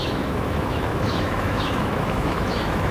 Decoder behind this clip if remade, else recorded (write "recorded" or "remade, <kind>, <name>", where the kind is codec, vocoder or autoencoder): remade, autoencoder, DAC-VAE